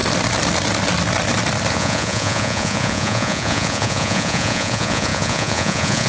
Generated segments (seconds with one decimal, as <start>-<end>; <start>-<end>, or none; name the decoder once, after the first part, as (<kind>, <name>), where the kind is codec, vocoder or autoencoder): 1.7-6.1 (vocoder, Vocos)